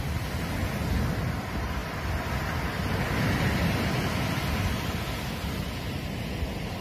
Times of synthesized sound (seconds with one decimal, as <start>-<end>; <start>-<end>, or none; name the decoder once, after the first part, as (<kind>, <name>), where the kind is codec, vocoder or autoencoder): none